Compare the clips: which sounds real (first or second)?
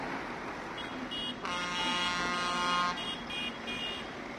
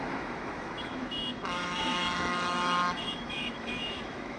first